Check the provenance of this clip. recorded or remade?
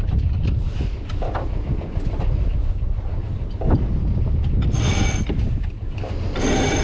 recorded